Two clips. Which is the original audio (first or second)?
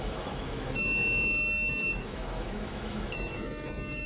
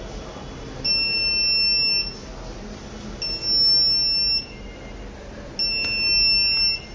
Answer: second